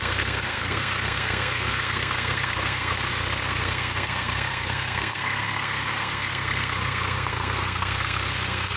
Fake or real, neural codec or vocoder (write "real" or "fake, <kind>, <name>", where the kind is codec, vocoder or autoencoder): fake, codec, SNAC